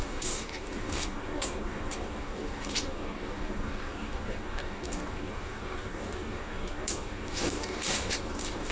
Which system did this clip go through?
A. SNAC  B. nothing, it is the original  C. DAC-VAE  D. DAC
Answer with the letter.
D